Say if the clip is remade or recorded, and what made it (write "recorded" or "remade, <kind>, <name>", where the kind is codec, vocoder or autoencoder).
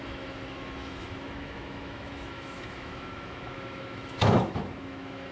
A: remade, autoencoder, DAC-VAE